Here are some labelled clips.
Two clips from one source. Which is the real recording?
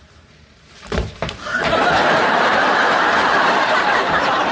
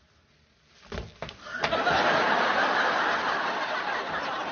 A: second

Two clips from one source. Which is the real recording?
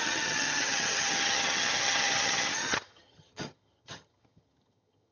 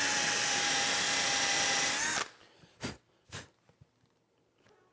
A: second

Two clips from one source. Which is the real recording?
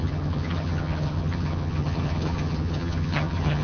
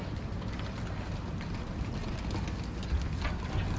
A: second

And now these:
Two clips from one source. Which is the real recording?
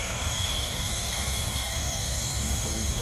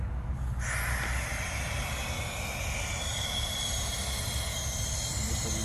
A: second